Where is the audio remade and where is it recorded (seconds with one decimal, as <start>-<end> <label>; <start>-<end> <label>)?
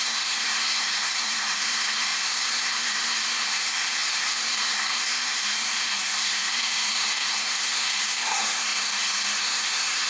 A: 0.0-10.1 remade